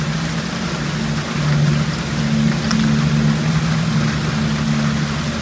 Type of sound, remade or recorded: recorded